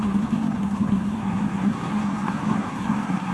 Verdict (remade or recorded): remade